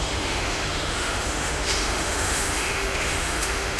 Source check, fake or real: fake